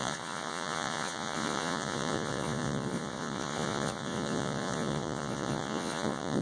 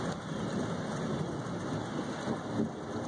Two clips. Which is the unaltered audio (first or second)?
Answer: second